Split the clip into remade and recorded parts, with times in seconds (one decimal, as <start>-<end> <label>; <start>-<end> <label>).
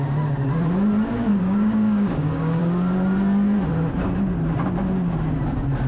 0.0-1.3 recorded; 1.3-2.6 remade; 2.6-5.9 recorded